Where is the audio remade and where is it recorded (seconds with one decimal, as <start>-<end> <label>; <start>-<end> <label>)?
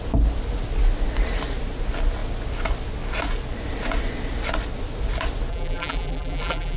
0.0-5.5 recorded; 5.5-6.8 remade